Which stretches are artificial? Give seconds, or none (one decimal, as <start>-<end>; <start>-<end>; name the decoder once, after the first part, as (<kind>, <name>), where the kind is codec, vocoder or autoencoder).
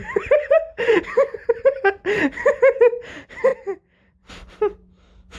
0.0-2.2 (vocoder, BigVGAN v2); 3.5-4.3